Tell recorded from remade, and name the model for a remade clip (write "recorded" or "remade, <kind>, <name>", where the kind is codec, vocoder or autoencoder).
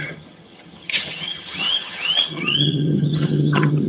remade, vocoder, HiFi-GAN